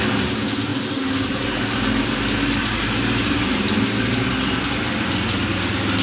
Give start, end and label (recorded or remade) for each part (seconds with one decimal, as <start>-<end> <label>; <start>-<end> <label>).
0.0-6.0 recorded